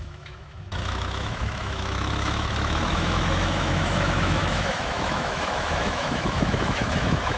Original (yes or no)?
no